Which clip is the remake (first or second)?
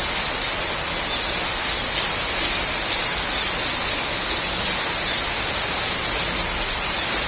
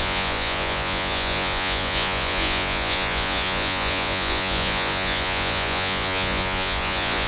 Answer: second